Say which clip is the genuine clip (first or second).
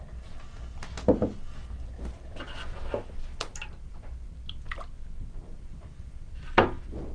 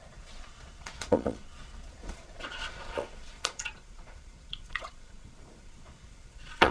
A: first